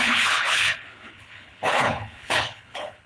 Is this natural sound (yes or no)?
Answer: no